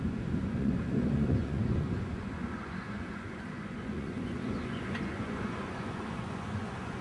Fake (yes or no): yes